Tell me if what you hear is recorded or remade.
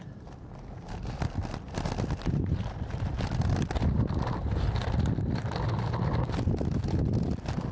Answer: recorded